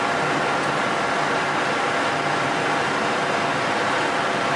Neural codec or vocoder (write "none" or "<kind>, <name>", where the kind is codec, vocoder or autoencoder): none